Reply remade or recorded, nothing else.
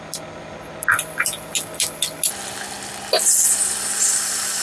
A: recorded